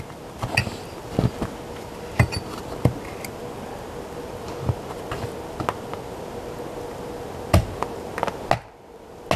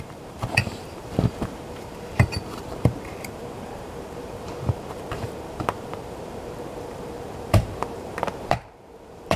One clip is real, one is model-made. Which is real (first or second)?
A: first